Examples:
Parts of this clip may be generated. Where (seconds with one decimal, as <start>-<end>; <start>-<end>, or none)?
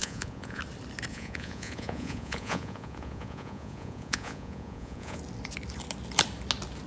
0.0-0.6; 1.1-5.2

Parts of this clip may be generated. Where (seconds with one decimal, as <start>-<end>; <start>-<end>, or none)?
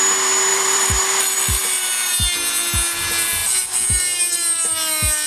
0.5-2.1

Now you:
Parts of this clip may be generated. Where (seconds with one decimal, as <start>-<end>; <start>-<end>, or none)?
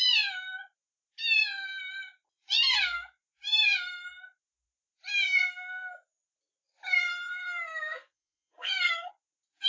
7.1-9.1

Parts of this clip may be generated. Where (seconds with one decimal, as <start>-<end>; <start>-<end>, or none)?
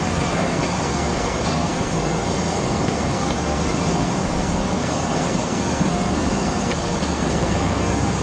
0.0-8.2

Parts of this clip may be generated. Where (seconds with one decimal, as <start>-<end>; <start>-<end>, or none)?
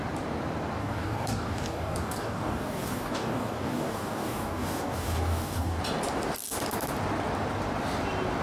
0.8-5.8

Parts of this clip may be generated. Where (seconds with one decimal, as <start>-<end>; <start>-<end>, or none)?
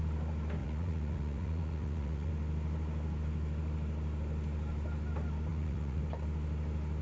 0.6-2.3; 5.5-6.0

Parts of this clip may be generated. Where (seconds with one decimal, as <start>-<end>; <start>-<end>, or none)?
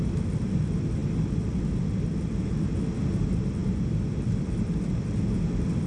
none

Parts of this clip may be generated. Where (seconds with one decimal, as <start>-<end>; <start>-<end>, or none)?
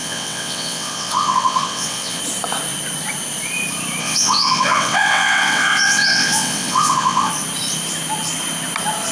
0.0-2.2; 4.0-7.3